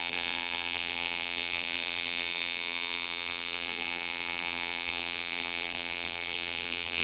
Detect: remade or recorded remade